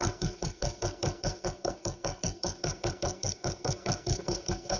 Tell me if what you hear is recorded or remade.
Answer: remade